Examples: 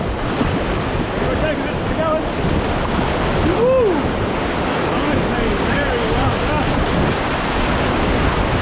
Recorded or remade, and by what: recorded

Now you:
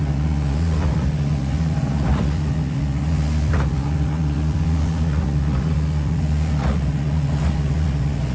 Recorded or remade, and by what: remade, vocoder, Vocos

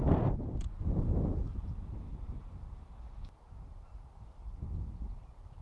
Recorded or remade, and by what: recorded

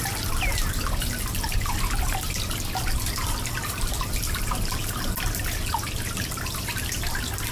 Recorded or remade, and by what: recorded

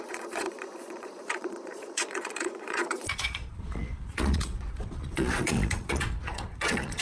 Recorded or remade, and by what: remade, vocoder, Vocos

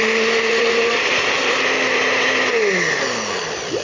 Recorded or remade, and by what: recorded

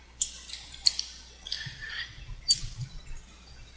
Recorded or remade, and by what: recorded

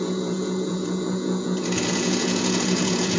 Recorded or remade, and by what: remade, vocoder, Vocos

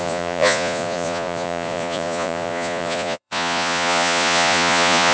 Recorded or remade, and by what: remade, vocoder, Vocos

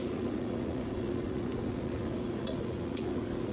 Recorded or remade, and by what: remade, vocoder, Vocos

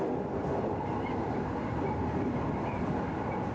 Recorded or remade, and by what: recorded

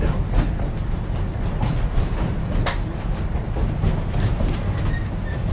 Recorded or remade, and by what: recorded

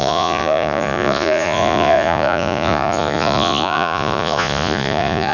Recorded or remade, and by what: remade, vocoder, Vocos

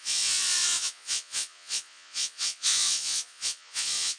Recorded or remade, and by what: remade, vocoder, Vocos